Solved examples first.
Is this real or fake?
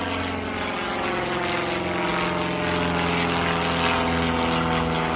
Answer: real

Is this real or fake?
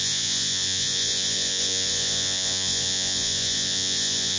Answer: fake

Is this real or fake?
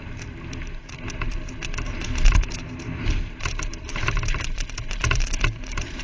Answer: fake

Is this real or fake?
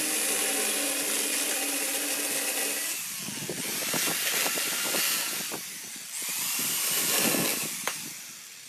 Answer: real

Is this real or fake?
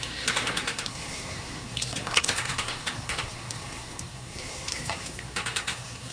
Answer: fake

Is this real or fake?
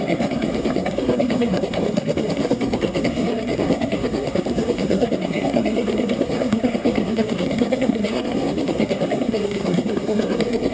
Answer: fake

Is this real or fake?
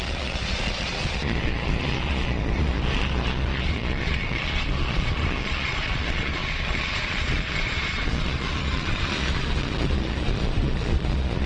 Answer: fake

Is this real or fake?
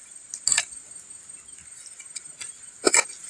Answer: real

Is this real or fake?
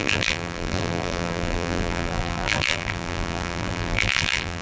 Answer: fake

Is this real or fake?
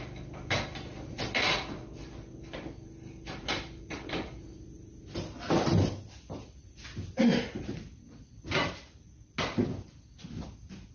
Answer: real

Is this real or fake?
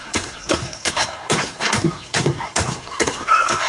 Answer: fake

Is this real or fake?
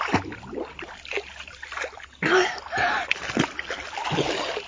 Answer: real